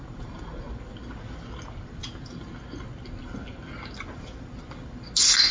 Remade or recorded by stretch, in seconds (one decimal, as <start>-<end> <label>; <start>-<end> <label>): 0.0-5.5 recorded